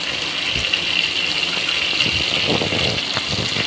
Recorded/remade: recorded